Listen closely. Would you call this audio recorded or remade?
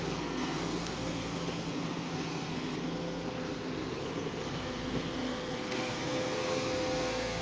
remade